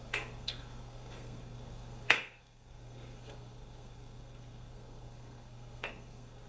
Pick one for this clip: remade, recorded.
remade